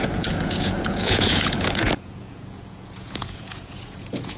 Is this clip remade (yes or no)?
yes